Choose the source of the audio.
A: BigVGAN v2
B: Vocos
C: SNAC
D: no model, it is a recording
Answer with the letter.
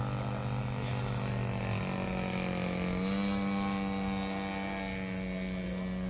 D